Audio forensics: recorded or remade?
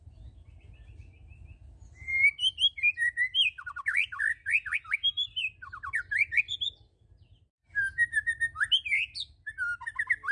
recorded